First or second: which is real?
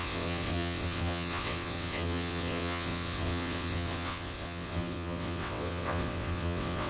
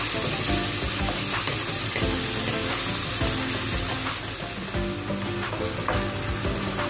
second